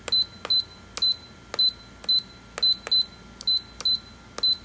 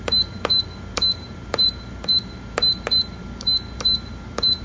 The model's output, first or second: second